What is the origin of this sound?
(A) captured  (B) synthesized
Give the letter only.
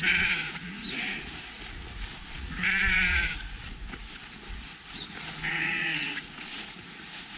B